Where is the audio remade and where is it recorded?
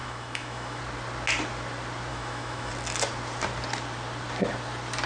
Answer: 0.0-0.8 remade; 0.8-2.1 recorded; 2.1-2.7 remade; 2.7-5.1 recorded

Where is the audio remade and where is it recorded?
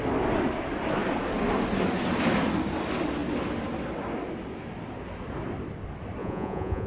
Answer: 0.0-6.2 recorded; 6.2-6.9 remade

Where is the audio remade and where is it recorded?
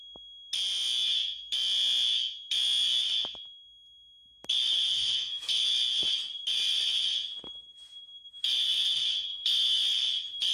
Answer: 0.0-4.9 recorded; 4.9-5.7 remade; 5.7-9.3 recorded; 9.3-9.8 remade; 9.8-10.5 recorded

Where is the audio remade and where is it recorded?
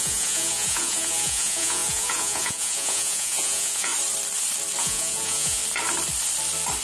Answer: 0.0-3.9 remade; 3.9-4.8 recorded; 4.8-5.6 remade; 5.6-6.8 recorded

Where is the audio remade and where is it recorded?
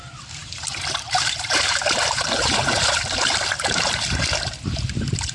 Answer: 0.0-5.3 remade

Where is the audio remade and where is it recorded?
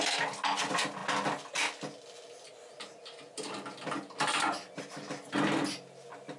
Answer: 0.0-6.4 recorded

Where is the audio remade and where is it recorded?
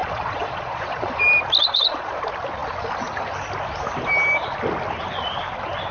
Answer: 0.0-1.2 remade; 1.2-1.6 recorded; 1.6-2.2 remade; 2.2-5.9 recorded